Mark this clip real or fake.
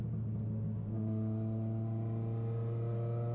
real